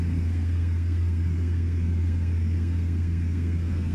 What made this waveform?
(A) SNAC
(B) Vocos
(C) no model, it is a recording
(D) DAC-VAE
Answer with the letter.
A